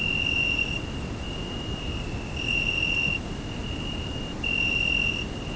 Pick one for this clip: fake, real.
real